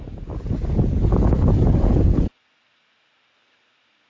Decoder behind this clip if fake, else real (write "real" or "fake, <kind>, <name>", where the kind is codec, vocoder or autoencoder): real